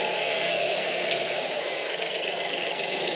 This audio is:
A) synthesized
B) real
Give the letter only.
A